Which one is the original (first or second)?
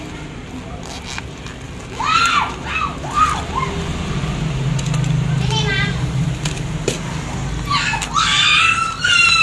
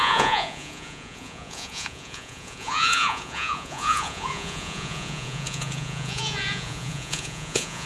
first